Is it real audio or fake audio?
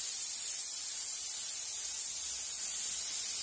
real